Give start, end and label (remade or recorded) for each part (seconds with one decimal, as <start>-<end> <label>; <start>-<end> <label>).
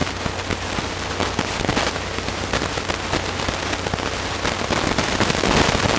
0.0-6.0 recorded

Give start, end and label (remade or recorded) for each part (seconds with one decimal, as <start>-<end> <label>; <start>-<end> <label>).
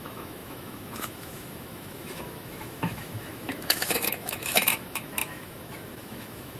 0.0-6.6 remade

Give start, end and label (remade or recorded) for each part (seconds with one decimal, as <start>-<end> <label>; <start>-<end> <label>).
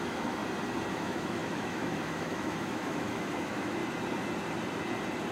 0.0-0.4 remade; 0.4-0.9 recorded; 0.9-3.8 remade; 3.8-5.3 recorded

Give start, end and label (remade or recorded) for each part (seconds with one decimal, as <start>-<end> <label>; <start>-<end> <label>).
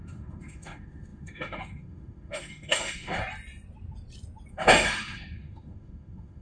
0.0-3.2 remade; 3.2-4.5 recorded; 4.5-6.4 remade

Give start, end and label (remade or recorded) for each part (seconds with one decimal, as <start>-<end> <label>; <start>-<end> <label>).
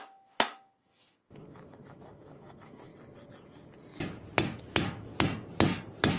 0.0-2.9 remade; 2.9-4.6 recorded; 4.6-5.1 remade; 5.1-6.2 recorded